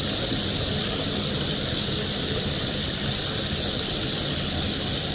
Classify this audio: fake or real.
real